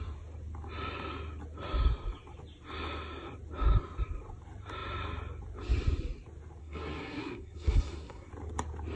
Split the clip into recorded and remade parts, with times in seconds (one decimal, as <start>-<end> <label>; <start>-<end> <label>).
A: 0.0-6.6 recorded; 6.6-8.3 remade; 8.3-9.0 recorded